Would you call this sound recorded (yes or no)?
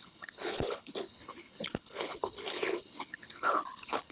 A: no